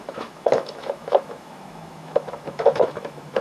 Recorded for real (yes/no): no